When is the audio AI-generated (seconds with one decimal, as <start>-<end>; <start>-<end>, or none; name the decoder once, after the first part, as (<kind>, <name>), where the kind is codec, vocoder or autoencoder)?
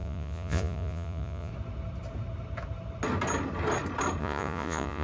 0.0-1.5 (vocoder, Vocos); 4.2-5.0